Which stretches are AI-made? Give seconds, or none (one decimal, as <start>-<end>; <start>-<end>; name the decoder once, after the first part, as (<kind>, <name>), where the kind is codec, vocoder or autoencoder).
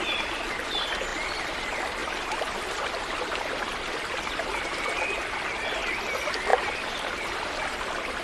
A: 2.0-3.2 (vocoder, BigVGAN v2); 6.5-8.2